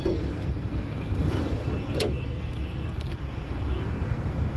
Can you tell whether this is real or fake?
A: fake